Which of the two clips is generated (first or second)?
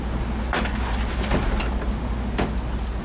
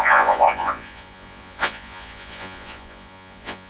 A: second